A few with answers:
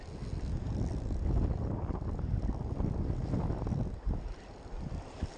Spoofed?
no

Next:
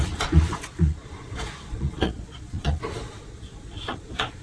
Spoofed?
yes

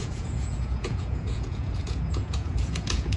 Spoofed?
yes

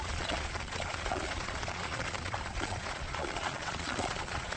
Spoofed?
yes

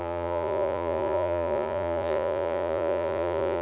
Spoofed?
yes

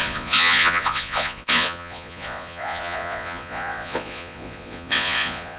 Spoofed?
yes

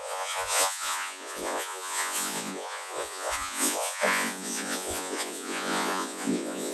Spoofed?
yes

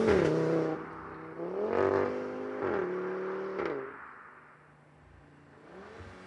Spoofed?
no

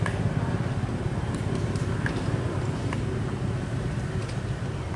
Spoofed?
no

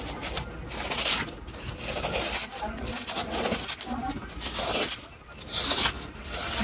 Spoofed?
no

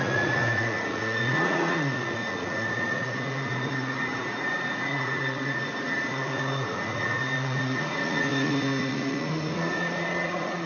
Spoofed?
yes